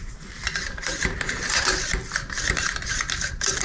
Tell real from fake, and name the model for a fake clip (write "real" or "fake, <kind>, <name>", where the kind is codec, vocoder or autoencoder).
real